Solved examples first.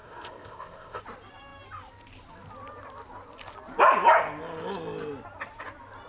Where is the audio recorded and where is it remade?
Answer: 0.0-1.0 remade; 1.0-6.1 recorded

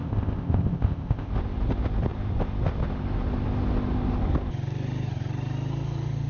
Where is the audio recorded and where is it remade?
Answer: 0.0-1.3 remade; 1.3-6.3 recorded

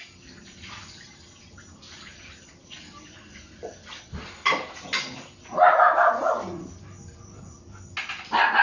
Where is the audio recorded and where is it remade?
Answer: 0.0-8.6 recorded

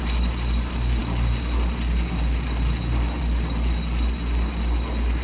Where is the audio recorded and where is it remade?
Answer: 0.0-5.2 recorded

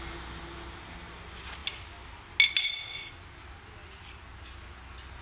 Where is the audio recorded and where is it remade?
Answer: 0.0-2.6 recorded; 2.6-3.1 remade; 3.1-5.2 recorded

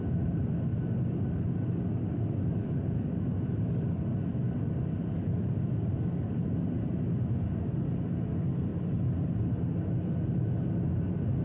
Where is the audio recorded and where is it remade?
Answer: 0.0-11.4 recorded

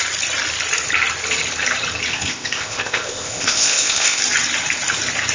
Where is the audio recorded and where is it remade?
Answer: 0.0-2.1 recorded; 2.1-4.2 remade; 4.2-5.3 recorded